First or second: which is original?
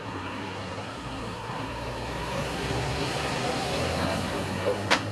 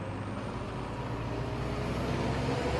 second